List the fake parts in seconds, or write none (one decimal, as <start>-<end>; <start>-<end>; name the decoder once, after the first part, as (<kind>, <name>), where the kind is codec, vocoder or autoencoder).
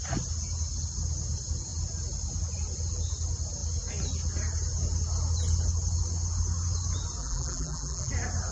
7.2-8.1 (vocoder, BigVGAN v2)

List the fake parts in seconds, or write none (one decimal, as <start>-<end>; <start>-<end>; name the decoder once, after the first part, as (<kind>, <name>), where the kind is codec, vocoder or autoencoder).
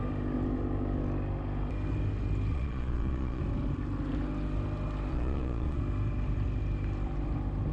2.5-3.4 (vocoder, Vocos); 5.1-5.8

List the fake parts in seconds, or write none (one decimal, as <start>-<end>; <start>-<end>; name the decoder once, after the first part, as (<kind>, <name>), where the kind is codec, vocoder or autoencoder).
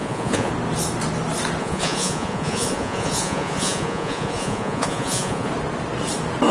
0.0-0.5 (vocoder, Vocos); 1.6-5.5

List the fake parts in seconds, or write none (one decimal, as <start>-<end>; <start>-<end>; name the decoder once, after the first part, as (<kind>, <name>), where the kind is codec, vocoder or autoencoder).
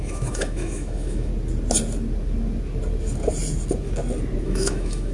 0.0-1.3 (autoencoder, DAC-VAE); 4.4-5.1